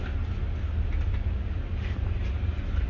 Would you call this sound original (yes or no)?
yes